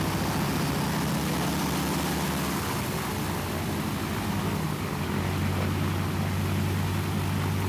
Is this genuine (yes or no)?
yes